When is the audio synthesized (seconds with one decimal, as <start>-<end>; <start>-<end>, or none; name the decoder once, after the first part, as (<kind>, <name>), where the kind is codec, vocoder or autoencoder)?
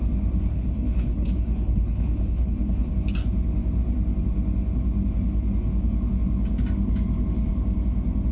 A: 0.5-2.9 (codec, HILCodec)